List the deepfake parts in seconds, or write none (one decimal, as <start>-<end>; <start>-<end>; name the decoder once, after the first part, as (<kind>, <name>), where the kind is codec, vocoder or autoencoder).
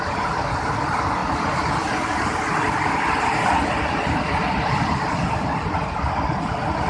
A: none